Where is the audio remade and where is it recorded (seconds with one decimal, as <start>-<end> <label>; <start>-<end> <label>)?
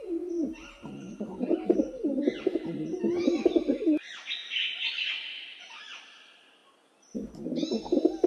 0.0-4.4 recorded; 4.4-5.3 remade; 5.3-6.6 recorded; 6.6-7.3 remade; 7.3-8.3 recorded